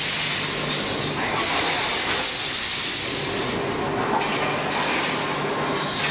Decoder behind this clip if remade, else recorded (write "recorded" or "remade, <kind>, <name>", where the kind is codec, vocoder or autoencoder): recorded